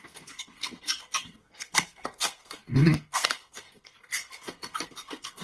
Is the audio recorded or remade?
remade